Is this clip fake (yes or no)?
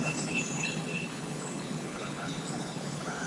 yes